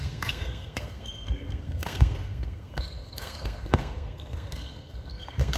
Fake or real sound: fake